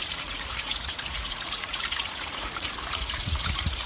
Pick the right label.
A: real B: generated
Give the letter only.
B